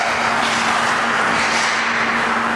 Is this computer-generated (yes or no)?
no